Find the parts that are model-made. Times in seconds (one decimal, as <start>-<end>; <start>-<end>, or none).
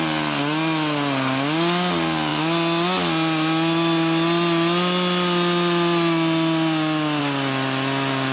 none